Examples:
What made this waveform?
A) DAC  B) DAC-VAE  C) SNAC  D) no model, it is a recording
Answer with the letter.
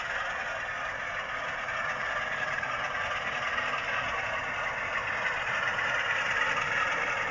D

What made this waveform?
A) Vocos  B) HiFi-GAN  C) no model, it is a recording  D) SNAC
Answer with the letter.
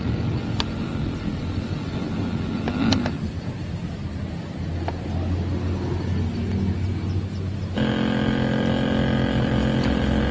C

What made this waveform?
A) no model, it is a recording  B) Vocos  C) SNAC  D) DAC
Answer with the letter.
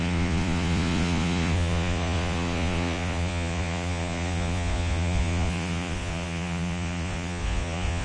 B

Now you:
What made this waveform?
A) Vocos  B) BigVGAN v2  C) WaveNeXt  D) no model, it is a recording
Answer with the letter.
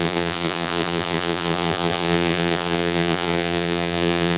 B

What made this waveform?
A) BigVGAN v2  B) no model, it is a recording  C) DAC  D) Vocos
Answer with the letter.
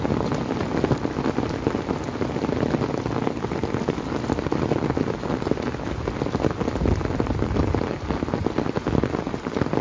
B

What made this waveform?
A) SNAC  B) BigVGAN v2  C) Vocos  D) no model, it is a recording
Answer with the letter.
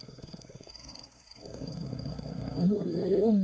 A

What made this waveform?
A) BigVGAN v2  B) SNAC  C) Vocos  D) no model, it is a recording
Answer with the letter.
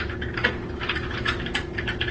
D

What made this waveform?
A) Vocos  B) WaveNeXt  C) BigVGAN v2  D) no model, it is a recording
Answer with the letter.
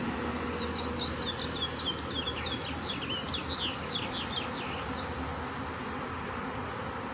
D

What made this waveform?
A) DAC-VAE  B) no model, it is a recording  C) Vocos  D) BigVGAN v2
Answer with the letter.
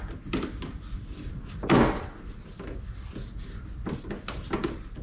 B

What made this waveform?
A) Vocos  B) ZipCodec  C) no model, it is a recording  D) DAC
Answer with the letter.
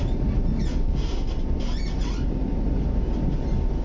C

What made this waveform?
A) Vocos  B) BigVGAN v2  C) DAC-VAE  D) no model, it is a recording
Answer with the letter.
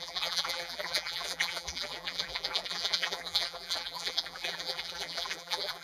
B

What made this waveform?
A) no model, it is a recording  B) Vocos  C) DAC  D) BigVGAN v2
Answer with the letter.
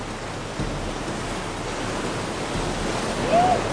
A